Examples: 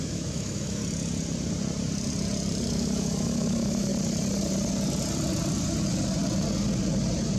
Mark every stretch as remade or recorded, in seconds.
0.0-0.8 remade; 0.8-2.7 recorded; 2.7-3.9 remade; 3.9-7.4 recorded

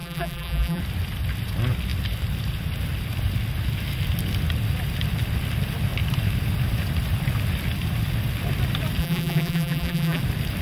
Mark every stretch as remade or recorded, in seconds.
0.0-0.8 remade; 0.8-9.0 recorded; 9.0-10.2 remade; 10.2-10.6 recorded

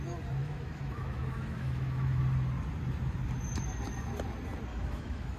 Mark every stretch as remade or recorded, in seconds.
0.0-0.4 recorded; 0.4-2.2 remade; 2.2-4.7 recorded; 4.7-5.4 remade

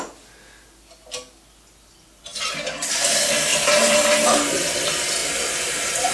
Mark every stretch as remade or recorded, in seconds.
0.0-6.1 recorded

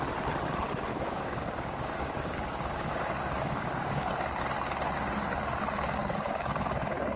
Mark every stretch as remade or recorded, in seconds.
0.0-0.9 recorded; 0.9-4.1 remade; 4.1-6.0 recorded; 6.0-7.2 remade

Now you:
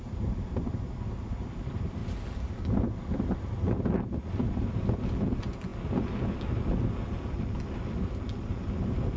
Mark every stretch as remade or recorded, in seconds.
0.0-9.2 recorded